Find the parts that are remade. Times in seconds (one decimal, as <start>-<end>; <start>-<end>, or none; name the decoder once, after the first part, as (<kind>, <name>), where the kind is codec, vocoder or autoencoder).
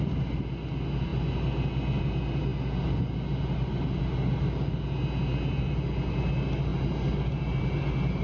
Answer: none